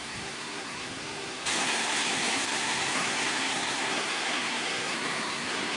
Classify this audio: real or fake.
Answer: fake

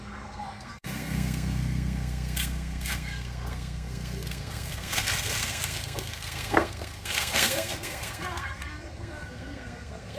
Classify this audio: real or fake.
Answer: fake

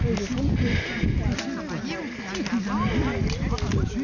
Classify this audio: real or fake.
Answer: real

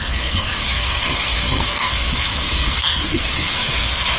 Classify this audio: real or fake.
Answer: fake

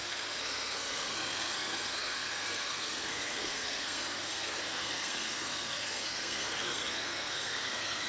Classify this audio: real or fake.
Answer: fake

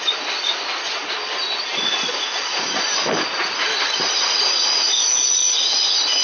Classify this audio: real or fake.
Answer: real